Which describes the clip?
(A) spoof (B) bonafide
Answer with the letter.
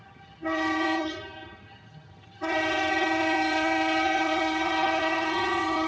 A